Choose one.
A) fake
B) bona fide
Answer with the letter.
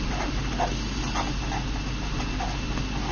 B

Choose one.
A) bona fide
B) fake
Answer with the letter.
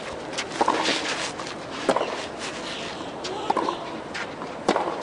A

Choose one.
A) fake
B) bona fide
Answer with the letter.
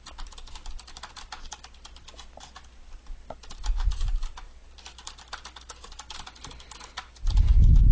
B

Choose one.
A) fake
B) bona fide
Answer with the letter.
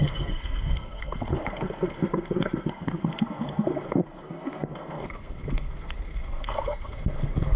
A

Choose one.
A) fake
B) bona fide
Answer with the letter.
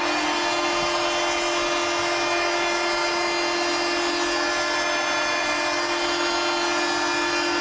B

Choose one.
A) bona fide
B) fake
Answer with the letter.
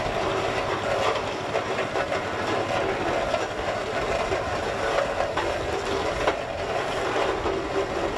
A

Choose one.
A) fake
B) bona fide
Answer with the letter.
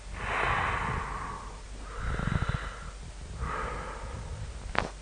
B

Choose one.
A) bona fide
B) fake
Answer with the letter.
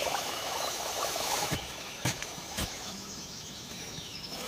B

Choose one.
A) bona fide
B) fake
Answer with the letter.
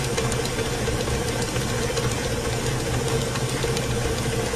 A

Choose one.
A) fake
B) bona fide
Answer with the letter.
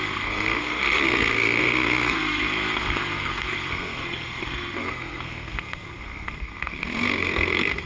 A